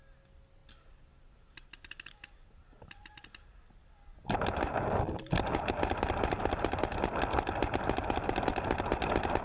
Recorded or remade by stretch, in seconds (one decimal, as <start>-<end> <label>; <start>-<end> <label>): 0.0-0.6 recorded; 0.6-5.8 remade; 5.8-9.4 recorded